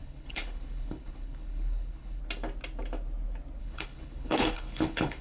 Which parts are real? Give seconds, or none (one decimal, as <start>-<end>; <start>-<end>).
2.2-3.6